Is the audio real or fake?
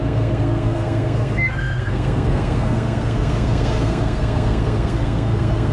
fake